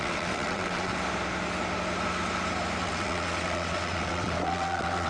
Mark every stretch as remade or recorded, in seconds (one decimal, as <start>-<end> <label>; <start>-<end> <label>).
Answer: 0.0-0.9 remade; 0.9-2.8 recorded; 2.8-5.1 remade